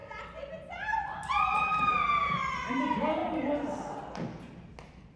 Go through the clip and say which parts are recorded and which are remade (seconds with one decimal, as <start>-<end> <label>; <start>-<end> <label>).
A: 0.0-3.2 recorded; 3.2-4.0 remade; 4.0-5.2 recorded